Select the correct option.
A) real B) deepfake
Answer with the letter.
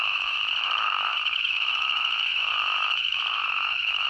B